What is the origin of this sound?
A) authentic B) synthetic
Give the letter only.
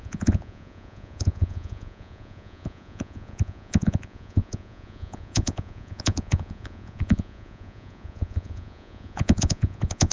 B